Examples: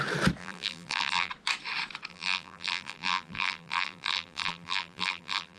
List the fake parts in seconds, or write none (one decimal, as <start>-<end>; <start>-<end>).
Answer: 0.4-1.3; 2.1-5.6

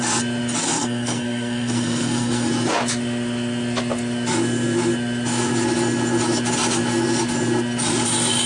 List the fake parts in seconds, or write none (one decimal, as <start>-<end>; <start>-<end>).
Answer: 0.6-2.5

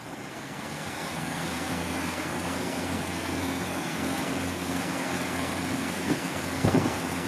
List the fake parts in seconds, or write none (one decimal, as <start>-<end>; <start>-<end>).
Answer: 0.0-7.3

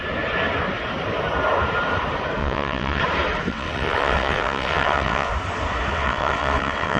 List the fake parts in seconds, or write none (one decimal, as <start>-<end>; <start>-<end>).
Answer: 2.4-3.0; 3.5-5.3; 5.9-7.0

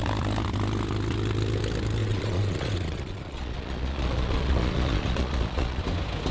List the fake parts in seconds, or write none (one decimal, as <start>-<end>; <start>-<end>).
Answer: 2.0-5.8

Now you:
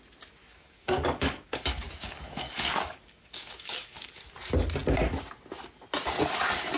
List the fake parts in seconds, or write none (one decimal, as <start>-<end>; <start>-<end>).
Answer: 0.4-4.1

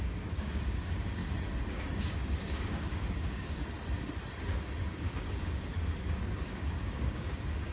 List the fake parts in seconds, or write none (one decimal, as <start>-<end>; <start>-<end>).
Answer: 0.0-1.2; 2.0-3.6; 4.9-7.7

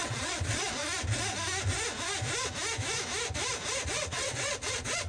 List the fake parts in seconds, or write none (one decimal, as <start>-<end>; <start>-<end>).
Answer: 0.0-0.8; 3.9-5.1